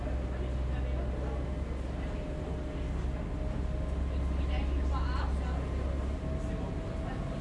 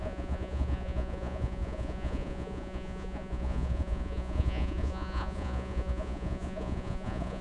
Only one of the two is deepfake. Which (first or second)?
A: second